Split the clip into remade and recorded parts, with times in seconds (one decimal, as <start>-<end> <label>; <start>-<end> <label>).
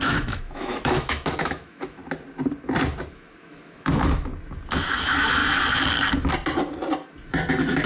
0.0-2.0 remade; 2.0-3.1 recorded; 3.1-4.3 remade; 4.3-4.8 recorded; 4.8-5.4 remade; 5.4-7.5 recorded; 7.5-7.9 remade